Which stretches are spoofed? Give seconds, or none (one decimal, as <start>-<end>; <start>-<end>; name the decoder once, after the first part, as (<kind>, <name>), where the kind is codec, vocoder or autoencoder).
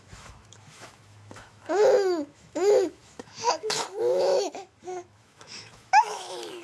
0.0-6.6 (autoencoder, DAC-VAE)